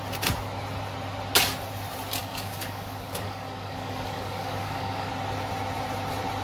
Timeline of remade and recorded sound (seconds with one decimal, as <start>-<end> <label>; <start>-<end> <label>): 0.0-2.2 recorded; 2.2-5.1 remade; 5.1-6.4 recorded